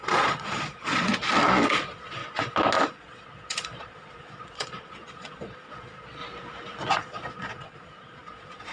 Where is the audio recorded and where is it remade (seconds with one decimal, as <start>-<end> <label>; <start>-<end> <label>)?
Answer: 0.0-1.1 remade; 1.1-1.8 recorded; 1.8-2.2 remade; 2.2-2.9 recorded; 2.9-6.2 remade; 6.2-6.9 recorded; 6.9-8.7 remade

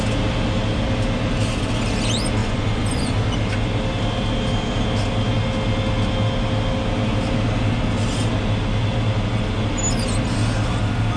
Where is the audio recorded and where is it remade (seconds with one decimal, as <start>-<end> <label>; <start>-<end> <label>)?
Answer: 0.0-2.4 recorded; 2.4-3.1 remade; 3.1-11.2 recorded